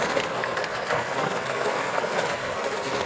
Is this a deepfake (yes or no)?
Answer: yes